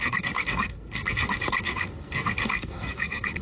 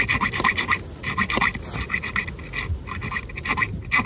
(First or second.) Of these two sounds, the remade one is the first